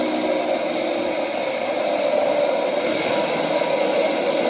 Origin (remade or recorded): recorded